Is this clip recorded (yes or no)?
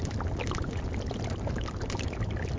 yes